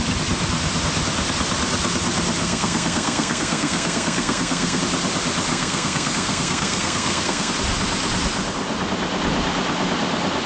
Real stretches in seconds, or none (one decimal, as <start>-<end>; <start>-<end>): 0.0-2.4; 4.8-5.5; 7.5-10.5